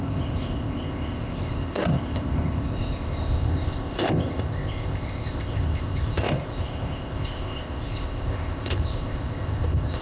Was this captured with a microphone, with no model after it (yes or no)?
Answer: no